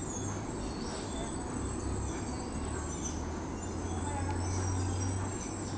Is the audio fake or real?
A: real